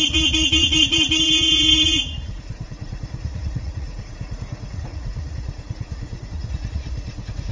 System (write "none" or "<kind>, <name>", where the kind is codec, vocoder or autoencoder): vocoder, Vocos